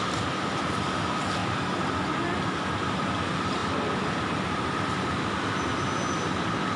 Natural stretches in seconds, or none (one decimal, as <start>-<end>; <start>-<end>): 0.0-6.8